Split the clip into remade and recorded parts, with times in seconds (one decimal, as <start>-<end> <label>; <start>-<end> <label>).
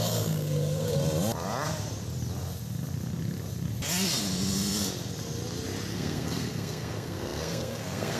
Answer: 0.0-1.0 remade; 1.0-5.9 recorded; 5.9-8.2 remade